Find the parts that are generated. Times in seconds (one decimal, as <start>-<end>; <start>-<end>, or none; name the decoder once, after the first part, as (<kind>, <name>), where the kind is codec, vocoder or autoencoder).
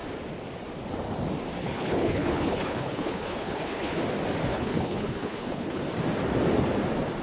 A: 1.6-4.0 (codec, HILCodec); 4.5-5.8